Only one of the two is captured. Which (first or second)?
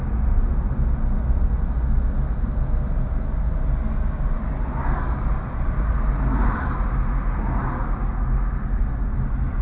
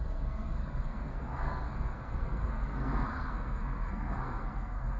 first